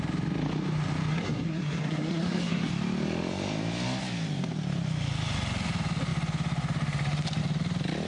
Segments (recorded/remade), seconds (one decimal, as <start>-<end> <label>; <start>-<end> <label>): 0.0-1.1 recorded; 1.1-2.7 remade; 2.7-8.1 recorded